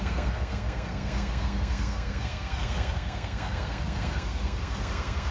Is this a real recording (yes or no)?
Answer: no